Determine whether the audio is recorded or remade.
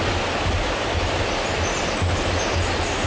remade